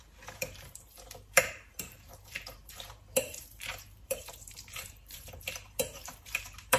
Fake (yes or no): yes